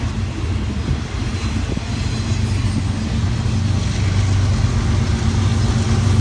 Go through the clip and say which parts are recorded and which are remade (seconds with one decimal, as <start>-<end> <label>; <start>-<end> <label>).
0.0-6.2 recorded